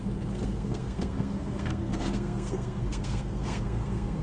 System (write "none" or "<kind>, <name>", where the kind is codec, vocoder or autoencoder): codec, SNAC